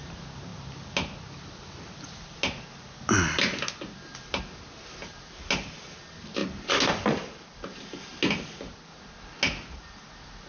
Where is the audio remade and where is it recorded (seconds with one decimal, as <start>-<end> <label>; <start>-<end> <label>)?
0.0-10.5 recorded